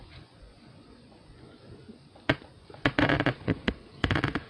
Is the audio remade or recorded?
remade